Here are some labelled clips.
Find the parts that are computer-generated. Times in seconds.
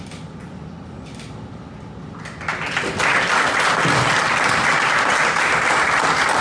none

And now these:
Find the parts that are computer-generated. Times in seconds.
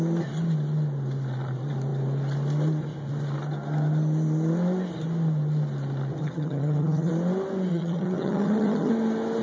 6.2-7.1 (vocoder, HiFi-GAN); 7.7-8.9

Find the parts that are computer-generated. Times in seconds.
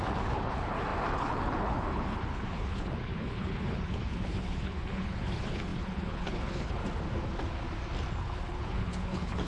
0.0-6.8 (codec, HILCodec); 8.2-9.5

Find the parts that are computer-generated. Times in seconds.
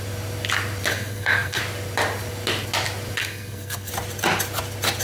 0.9-1.6 (codec, SNAC); 3.2-3.9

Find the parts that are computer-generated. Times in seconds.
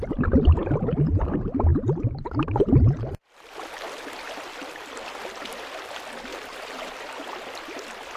6.3-6.9 (vocoder, BigVGAN v2)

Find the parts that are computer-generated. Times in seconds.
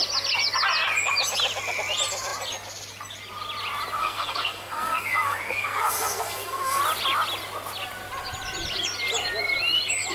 4.0-6.8 (codec, SNAC)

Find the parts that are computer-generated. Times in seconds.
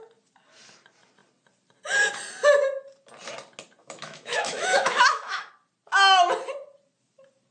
3.8-5.5 (autoencoder, DAC-VAE)